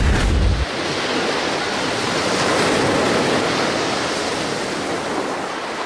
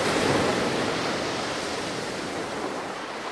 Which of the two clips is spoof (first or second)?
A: second